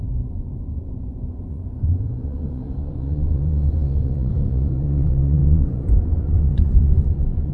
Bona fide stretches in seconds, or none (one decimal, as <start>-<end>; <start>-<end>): none